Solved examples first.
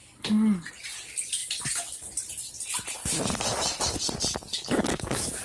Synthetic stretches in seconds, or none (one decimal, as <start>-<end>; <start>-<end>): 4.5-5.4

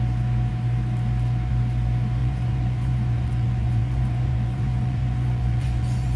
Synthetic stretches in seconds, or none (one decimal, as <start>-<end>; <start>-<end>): 2.2-6.2

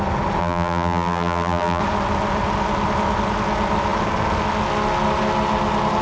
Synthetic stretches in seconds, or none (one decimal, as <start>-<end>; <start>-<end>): 0.4-1.8

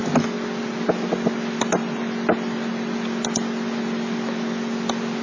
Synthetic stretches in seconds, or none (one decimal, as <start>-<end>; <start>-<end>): none

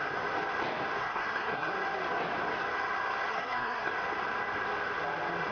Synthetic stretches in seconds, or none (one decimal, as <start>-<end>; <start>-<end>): 1.0-1.7; 3.3-3.9